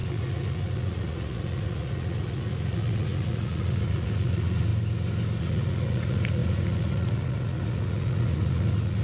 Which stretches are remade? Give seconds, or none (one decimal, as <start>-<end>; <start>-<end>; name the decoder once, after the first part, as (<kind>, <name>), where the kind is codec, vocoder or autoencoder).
0.0-4.7 (vocoder, Vocos); 5.4-9.0